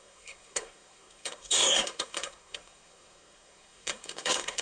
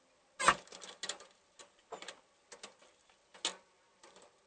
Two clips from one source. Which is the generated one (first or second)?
first